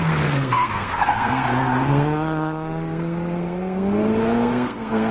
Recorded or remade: remade